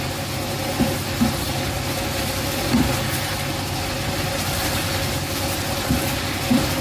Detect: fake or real real